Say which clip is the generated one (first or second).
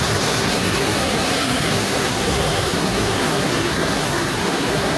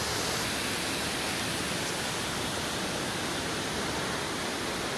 first